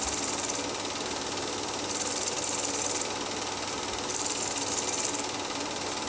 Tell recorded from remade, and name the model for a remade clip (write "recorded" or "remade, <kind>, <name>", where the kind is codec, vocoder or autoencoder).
recorded